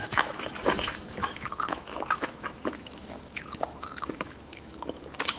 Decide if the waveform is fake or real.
fake